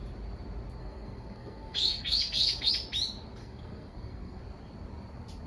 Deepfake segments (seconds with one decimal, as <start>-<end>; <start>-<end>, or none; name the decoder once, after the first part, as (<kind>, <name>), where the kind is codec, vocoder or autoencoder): 0.8-2.7 (codec, SNAC); 3.4-4.4